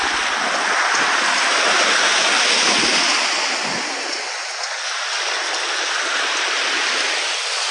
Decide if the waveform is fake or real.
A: real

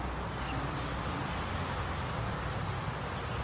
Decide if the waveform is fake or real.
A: real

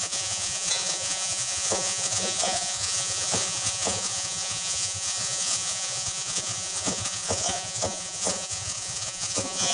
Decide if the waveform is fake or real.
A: fake